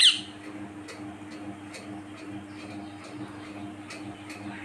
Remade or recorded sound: recorded